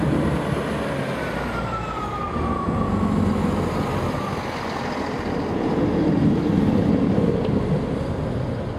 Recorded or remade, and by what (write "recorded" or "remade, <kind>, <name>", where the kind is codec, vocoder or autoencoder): recorded